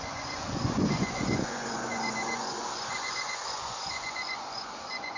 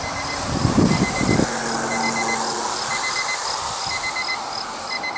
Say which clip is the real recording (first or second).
second